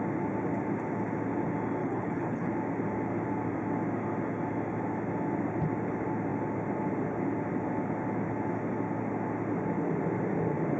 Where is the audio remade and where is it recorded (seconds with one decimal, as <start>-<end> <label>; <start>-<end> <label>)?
0.0-1.8 recorded; 1.8-2.5 remade; 2.5-10.8 recorded